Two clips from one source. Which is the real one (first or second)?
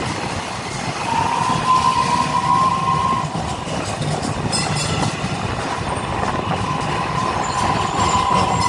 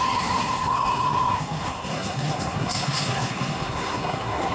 first